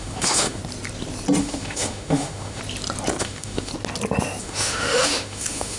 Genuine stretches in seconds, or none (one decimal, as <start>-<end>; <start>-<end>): 0.6-1.4; 2.6-3.2; 3.7-4.4